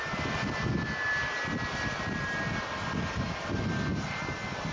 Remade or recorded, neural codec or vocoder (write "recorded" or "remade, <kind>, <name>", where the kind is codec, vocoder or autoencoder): recorded